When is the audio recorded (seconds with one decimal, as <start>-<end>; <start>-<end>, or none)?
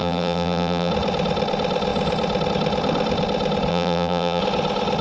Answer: 0.9-3.7; 4.4-5.0